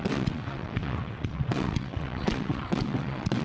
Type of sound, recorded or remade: remade